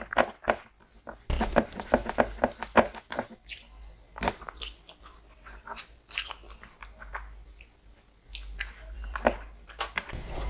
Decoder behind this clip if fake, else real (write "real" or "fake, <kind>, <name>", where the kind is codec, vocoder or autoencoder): real